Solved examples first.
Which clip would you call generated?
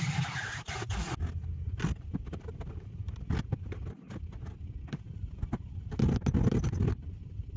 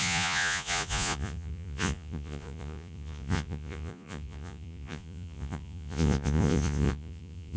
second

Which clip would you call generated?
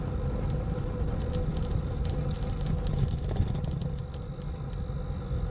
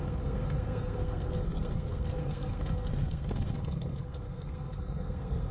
second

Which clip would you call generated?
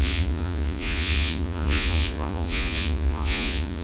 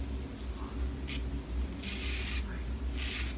first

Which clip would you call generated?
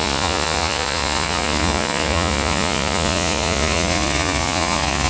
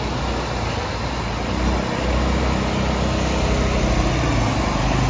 first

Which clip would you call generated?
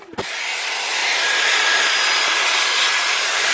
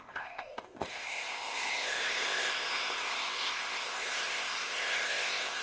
second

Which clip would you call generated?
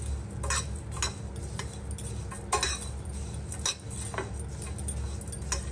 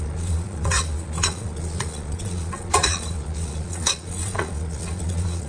second